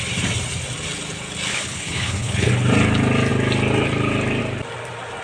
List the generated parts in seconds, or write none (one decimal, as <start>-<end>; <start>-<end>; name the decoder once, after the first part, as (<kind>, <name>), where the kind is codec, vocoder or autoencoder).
1.5-2.5 (codec, HILCodec)